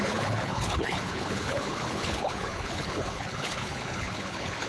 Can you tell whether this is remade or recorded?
remade